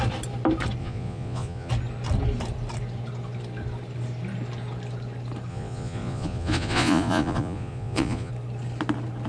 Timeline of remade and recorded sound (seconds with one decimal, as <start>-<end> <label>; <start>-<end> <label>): 0.0-0.8 recorded; 0.8-1.7 remade; 1.7-5.5 recorded; 5.5-8.3 remade; 8.3-9.3 recorded